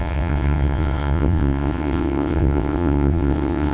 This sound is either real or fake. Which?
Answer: fake